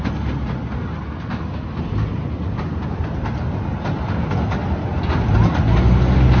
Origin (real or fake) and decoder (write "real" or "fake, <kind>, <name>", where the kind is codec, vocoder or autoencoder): real